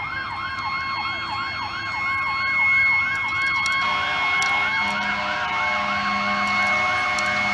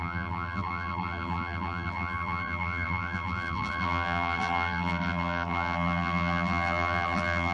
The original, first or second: first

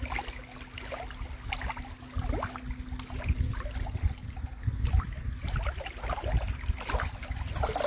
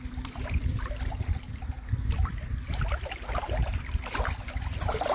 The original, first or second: first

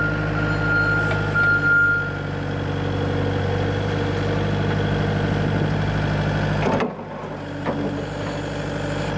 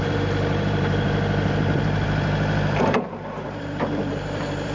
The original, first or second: first